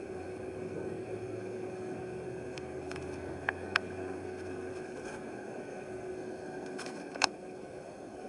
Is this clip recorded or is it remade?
remade